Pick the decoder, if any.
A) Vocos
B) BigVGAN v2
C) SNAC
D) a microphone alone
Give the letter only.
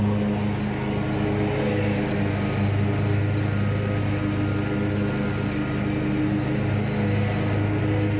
D